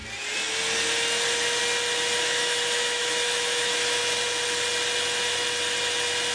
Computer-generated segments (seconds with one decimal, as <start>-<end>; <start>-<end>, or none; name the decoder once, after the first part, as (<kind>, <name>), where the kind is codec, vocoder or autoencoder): 2.2-4.0 (autoencoder, DAC-VAE)